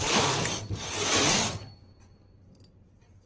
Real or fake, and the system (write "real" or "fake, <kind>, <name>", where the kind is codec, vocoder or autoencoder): fake, vocoder, BigVGAN v2